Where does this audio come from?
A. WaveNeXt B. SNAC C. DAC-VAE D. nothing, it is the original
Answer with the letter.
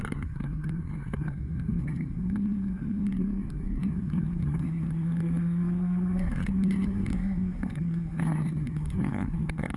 B